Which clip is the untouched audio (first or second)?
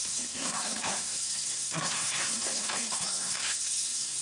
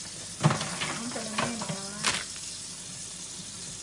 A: second